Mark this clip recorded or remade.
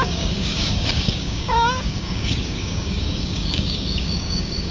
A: remade